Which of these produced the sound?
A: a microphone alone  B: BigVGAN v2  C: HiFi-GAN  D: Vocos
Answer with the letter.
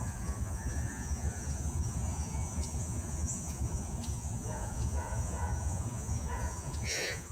D